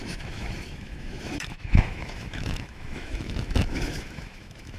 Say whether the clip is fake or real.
fake